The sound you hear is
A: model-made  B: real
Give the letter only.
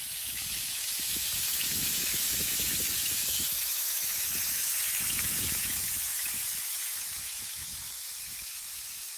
A